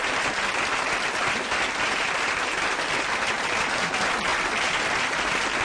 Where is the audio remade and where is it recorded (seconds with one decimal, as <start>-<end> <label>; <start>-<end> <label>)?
0.0-5.6 recorded